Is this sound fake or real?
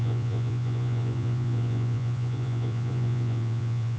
fake